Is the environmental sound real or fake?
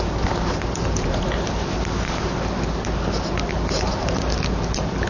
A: real